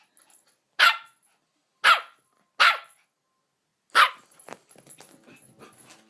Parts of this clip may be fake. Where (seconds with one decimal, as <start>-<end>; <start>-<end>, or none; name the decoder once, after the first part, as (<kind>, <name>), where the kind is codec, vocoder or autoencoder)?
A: none